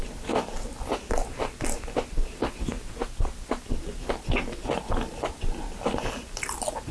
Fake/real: real